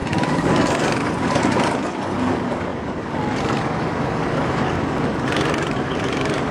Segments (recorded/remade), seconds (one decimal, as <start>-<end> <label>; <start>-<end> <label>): 0.0-6.5 remade